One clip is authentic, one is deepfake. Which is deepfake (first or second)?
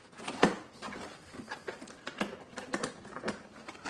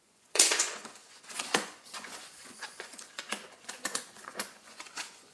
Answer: second